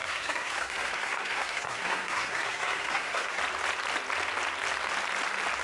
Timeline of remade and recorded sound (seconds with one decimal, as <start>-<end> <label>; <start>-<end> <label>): 0.0-3.4 remade; 3.4-5.6 recorded